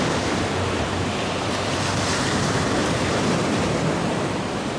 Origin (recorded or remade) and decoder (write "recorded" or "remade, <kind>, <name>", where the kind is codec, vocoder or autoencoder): recorded